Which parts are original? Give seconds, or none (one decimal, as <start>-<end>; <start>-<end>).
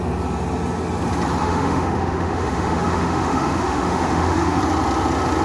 0.0-1.4; 4.6-5.4